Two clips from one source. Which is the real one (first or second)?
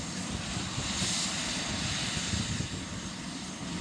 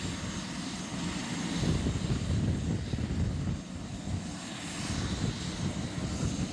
second